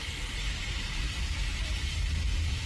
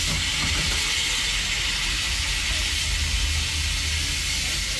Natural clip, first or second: second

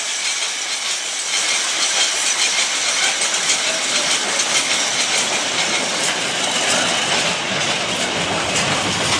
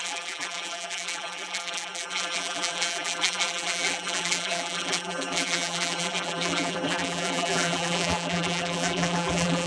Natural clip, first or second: first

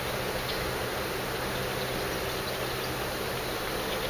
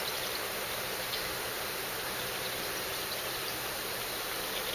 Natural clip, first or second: first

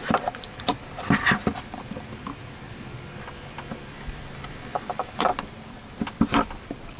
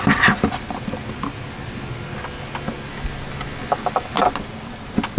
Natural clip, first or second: second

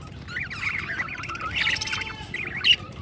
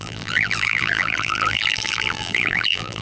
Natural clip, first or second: first